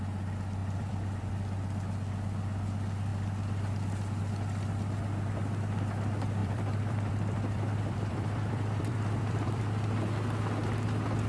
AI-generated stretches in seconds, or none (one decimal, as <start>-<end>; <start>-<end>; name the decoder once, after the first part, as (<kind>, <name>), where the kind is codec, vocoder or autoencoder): 0.6-1.3 (vocoder, BigVGAN v2); 6.4-9.6